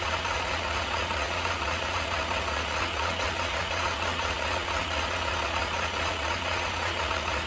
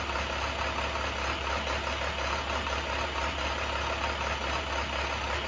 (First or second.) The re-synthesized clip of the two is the first